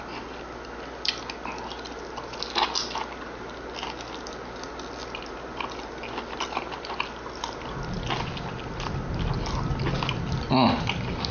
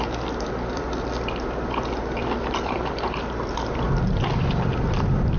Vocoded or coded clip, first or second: second